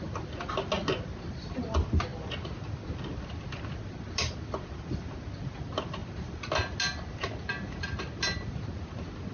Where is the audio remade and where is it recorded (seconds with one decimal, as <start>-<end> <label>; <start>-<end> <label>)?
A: 0.0-9.3 recorded